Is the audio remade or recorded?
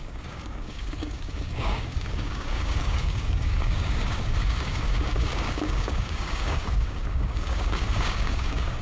remade